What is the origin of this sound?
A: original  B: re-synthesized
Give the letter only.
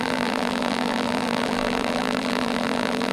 B